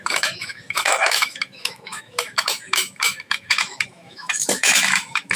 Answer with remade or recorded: remade